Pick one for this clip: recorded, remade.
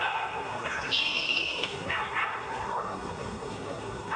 remade